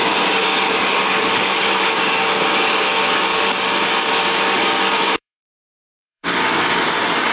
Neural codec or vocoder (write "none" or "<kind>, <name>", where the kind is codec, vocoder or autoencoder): codec, DAC